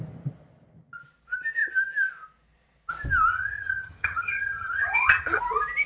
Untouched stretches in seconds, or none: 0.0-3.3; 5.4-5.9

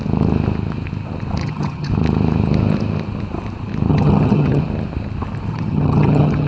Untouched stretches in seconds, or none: 0.0-1.4; 1.9-3.9; 4.6-5.5